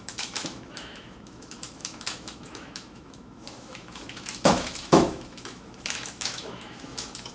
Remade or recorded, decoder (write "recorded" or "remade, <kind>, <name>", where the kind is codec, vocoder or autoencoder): remade, autoencoder, DAC-VAE